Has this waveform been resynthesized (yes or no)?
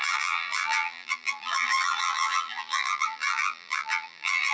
yes